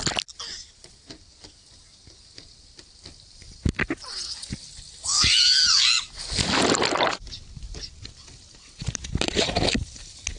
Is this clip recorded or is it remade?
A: recorded